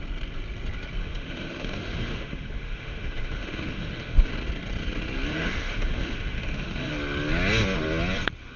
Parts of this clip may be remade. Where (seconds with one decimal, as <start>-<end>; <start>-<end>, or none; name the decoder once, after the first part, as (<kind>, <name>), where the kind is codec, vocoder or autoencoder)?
1.0-4.3 (autoencoder, DAC-VAE); 5.3-6.9